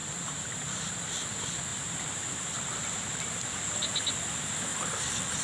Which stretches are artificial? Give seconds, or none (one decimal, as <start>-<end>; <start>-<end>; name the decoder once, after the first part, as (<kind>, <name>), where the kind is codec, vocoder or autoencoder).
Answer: 0.0-1.1 (vocoder, BigVGAN v2); 1.7-4.0; 4.7-5.4